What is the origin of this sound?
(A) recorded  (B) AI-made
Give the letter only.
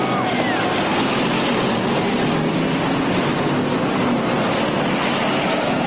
A